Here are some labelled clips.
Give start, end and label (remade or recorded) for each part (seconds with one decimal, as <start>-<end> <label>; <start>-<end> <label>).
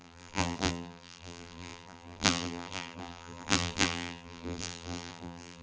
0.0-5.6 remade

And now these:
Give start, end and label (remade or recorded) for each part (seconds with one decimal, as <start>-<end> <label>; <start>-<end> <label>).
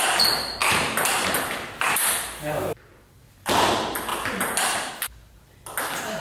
0.0-0.6 recorded; 0.6-2.2 remade; 2.2-4.1 recorded; 4.1-4.9 remade; 4.9-6.2 recorded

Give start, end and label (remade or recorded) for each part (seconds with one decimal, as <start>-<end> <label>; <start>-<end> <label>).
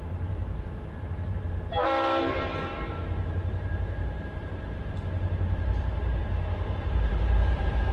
0.0-0.4 remade; 0.4-1.0 recorded; 1.0-7.9 remade